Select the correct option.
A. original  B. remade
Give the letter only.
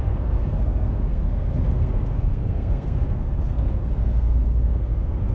B